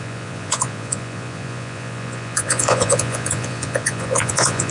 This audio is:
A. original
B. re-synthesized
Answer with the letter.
B